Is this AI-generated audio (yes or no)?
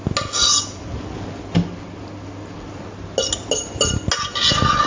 no